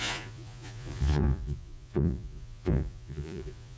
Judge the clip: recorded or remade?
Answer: remade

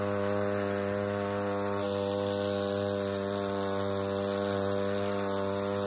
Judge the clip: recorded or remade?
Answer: recorded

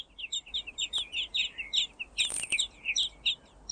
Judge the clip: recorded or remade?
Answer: recorded